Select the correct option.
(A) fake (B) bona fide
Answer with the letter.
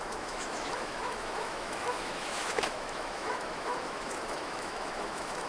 A